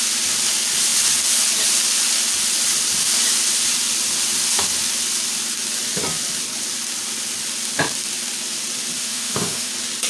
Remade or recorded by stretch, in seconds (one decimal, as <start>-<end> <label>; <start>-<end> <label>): 0.0-9.0 recorded; 9.0-9.7 remade; 9.7-10.1 recorded